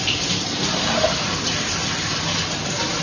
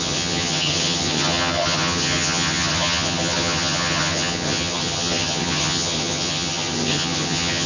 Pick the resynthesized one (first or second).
second